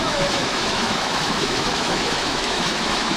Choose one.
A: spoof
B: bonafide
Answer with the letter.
A